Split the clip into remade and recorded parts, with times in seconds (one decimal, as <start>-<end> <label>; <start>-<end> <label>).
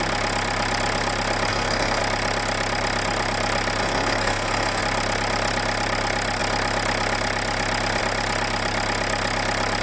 0.0-1.5 recorded; 1.5-2.0 remade; 2.0-3.8 recorded; 3.8-4.8 remade; 4.8-9.8 recorded